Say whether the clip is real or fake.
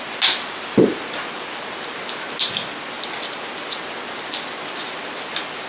real